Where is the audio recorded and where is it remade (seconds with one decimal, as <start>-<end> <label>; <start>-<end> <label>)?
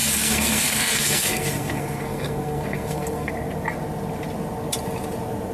0.0-3.3 remade; 3.3-5.5 recorded